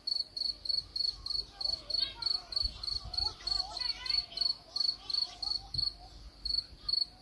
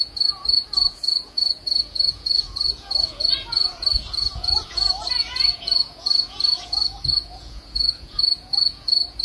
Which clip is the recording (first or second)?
first